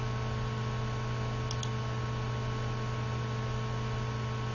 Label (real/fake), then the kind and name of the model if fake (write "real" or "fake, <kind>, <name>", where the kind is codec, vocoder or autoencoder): real